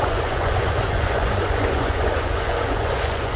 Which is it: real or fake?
fake